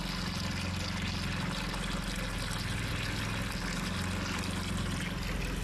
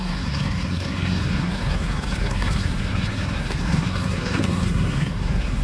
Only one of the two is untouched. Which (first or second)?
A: first